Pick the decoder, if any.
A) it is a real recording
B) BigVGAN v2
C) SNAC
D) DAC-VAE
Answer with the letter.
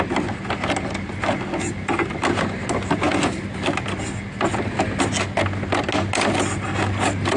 A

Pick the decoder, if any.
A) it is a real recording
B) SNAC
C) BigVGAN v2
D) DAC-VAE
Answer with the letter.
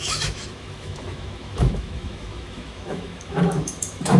D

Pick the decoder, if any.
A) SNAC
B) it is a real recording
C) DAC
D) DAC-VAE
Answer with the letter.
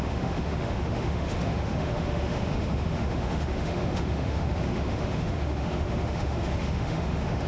D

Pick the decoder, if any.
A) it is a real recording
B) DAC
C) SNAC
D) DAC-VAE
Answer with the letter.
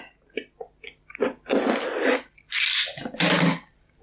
A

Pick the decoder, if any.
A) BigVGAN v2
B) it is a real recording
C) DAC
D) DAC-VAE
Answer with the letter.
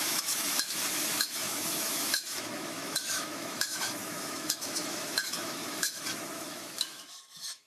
D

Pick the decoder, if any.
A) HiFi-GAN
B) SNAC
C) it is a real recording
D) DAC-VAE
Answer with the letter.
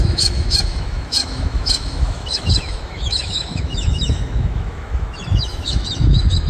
D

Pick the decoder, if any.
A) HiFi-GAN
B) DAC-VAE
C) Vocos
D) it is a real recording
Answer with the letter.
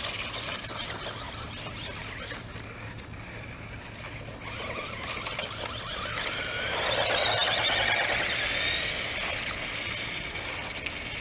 D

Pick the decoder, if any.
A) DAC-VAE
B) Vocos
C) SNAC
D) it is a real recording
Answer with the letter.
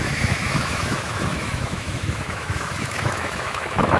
A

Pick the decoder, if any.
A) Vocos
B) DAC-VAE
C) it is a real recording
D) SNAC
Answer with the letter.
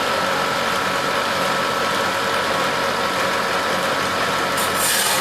C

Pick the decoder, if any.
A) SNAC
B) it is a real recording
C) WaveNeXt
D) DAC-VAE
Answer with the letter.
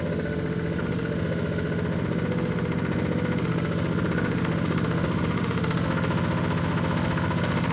D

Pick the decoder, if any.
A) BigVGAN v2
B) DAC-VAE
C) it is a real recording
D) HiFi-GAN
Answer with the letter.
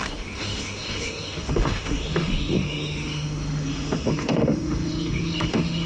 B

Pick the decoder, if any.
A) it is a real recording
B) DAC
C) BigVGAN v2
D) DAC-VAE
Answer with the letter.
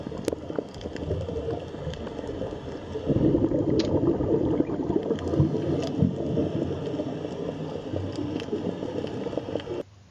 A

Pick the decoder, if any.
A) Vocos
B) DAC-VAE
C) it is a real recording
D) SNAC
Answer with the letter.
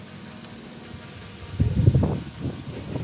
C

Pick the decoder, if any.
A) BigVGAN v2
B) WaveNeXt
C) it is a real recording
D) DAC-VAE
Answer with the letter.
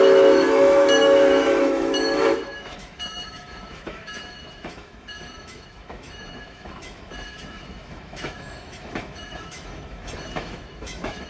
D